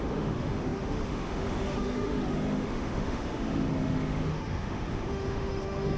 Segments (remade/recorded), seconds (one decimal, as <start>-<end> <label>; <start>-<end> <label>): 0.0-6.0 remade